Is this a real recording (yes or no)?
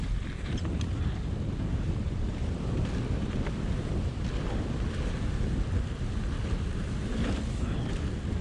yes